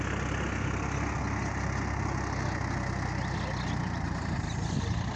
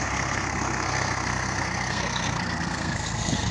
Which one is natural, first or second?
first